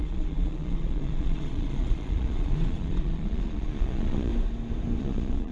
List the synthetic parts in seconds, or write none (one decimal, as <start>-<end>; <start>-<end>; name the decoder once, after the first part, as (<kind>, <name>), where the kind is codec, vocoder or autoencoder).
0.0-4.3 (vocoder, Vocos); 5.0-5.5